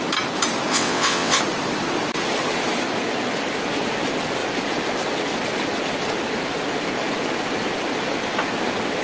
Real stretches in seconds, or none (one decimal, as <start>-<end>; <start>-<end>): 0.0-0.7; 1.4-9.0